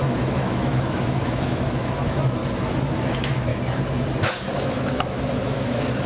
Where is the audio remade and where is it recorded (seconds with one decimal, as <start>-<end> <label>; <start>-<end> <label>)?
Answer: 0.0-2.4 remade; 2.4-2.9 recorded; 2.9-3.5 remade; 3.5-4.2 recorded; 4.2-6.1 remade